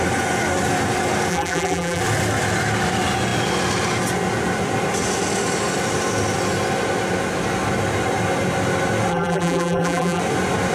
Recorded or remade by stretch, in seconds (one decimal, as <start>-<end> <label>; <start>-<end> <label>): 0.0-1.3 recorded; 1.3-2.0 remade; 2.0-9.1 recorded; 9.1-10.2 remade; 10.2-10.7 recorded